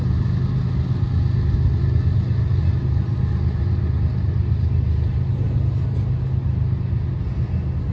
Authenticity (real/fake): real